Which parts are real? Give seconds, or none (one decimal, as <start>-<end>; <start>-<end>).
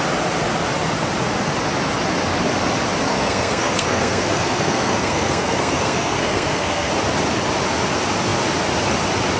0.0-3.1; 6.9-9.4